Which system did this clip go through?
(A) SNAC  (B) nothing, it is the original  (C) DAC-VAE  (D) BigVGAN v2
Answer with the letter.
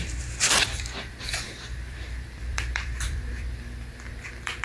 D